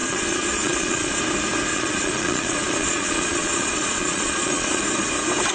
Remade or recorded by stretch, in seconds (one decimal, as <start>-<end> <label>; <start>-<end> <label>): 0.0-1.2 remade; 1.2-1.7 recorded; 1.7-4.8 remade; 4.8-5.5 recorded